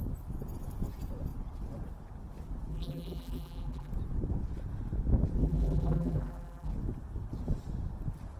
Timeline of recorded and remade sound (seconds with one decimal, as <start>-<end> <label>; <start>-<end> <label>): 0.0-2.7 recorded; 2.7-3.9 remade; 3.9-5.4 recorded; 5.4-6.7 remade; 6.7-8.4 recorded